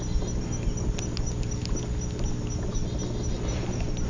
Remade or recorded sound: recorded